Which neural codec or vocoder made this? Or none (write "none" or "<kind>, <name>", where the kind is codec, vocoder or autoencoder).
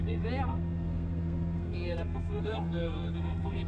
codec, SNAC